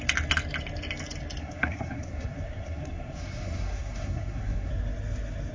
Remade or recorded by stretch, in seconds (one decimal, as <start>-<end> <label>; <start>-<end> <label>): 0.0-1.4 recorded; 1.4-4.7 remade; 4.7-5.5 recorded